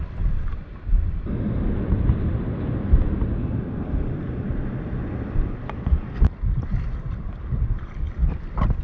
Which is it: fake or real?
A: real